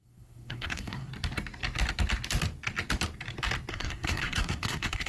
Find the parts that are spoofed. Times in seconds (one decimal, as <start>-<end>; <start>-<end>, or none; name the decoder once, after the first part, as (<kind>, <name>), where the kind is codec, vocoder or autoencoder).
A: 0.0-1.1 (codec, SNAC); 3.7-5.1